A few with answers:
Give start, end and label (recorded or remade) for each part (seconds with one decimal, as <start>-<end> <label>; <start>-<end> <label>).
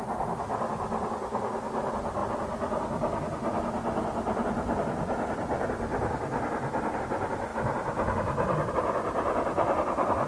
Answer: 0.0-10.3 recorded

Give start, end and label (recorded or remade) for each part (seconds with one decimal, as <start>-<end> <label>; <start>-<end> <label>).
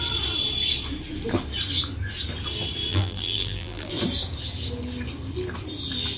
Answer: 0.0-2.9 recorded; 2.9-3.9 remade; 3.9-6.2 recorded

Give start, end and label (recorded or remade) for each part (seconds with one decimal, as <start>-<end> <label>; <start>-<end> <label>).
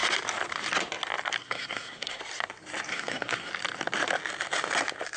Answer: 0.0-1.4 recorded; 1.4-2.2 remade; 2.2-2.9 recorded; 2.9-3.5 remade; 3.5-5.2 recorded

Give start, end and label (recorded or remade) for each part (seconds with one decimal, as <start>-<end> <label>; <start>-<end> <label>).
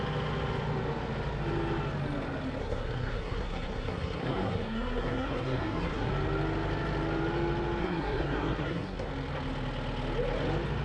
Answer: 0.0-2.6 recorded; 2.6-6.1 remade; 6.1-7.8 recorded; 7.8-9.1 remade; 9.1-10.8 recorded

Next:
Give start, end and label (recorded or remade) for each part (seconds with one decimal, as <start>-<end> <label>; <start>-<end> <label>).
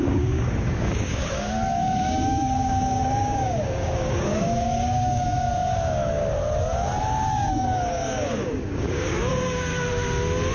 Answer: 0.0-6.2 remade; 6.2-7.0 recorded; 7.0-9.7 remade; 9.7-10.5 recorded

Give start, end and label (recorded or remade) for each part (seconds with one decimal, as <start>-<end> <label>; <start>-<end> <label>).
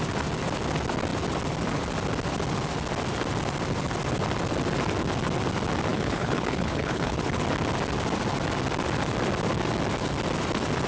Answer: 0.0-5.9 recorded; 5.9-7.4 remade; 7.4-10.9 recorded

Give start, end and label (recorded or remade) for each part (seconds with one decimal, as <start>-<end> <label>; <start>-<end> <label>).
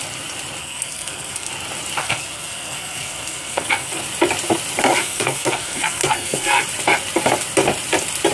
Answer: 0.0-0.6 recorded; 0.6-1.5 remade; 1.5-2.0 recorded; 2.0-4.0 remade; 4.0-5.0 recorded; 5.0-6.6 remade; 6.6-8.3 recorded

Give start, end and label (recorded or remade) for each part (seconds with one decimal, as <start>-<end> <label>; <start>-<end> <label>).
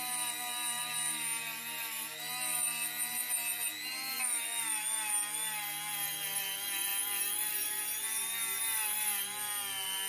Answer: 0.0-10.1 recorded